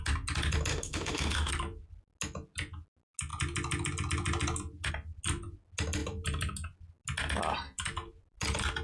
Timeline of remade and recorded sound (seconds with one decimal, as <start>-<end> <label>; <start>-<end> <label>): 0.0-0.7 recorded; 0.7-1.5 remade; 1.5-8.8 recorded